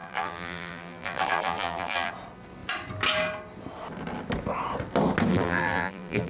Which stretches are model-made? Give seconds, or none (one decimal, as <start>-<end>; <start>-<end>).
0.0-2.1; 5.3-6.3